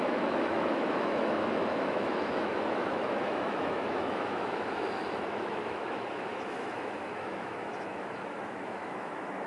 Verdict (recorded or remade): remade